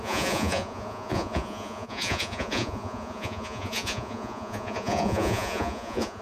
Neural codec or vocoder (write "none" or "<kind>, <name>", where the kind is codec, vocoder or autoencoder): vocoder, Vocos